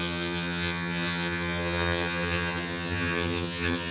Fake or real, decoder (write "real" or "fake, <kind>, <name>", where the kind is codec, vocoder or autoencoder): fake, vocoder, HiFi-GAN